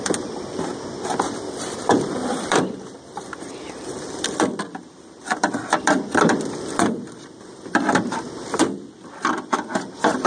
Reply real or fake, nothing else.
fake